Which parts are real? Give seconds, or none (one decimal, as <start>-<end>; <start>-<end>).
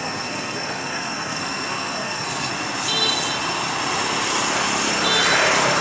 2.5-5.8